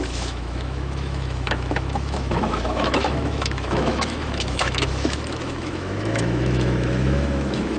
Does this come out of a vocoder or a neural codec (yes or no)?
yes